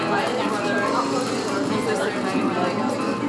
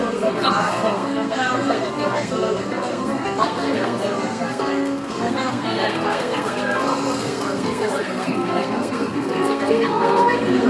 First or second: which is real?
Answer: first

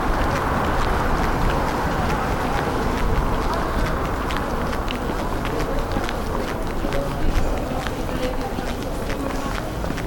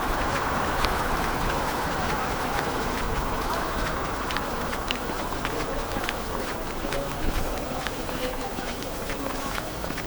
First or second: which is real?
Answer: first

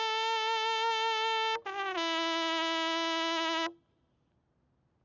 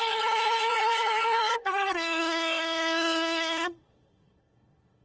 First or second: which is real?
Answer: first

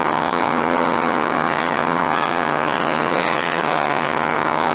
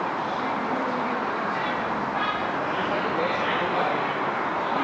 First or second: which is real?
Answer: second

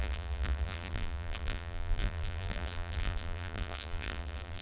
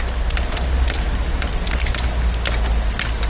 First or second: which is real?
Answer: second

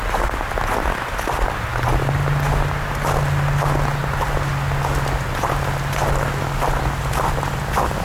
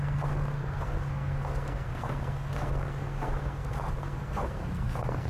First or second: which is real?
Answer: first